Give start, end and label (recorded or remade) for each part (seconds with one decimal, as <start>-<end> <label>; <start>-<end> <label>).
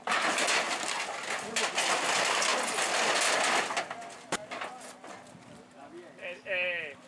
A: 0.0-7.1 recorded